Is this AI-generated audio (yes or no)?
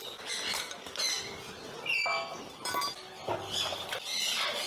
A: no